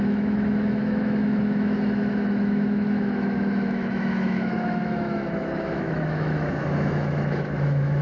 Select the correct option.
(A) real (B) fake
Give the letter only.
B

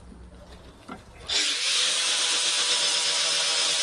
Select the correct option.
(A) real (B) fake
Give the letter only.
A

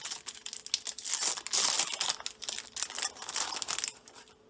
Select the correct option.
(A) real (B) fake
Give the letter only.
A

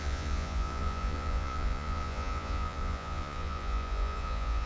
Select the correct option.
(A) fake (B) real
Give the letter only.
A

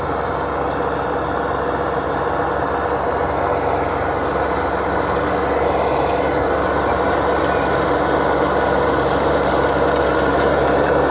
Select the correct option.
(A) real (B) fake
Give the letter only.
A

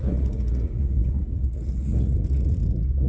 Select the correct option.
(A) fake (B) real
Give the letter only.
A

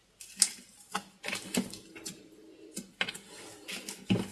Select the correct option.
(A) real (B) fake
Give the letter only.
A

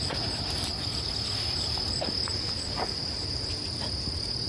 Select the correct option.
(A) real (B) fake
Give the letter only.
A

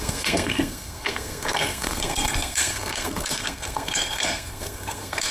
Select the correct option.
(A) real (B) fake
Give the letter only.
B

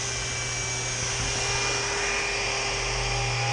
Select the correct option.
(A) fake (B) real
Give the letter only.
B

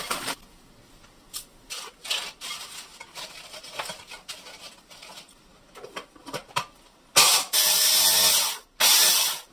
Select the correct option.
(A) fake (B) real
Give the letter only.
B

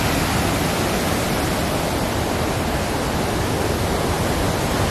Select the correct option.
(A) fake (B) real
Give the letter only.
B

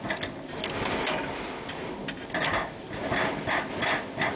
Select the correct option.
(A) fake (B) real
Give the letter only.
B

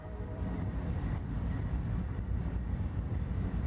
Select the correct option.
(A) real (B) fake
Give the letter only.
B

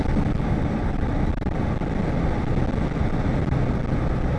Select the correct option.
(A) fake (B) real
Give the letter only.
B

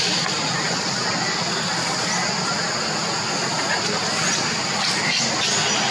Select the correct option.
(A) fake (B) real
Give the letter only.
B